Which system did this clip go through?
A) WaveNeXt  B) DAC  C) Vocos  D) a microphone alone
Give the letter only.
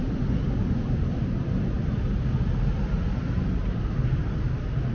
D